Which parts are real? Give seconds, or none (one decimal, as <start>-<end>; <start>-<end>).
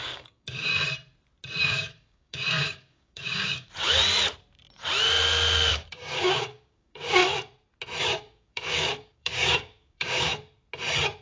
0.7-1.6; 4.0-5.7; 7.2-8.0; 10.3-11.2